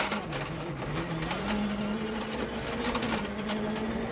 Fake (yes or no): no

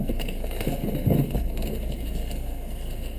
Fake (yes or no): yes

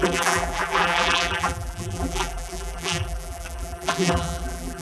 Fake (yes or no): yes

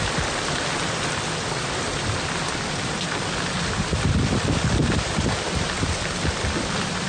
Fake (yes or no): no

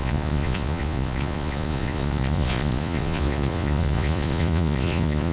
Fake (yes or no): yes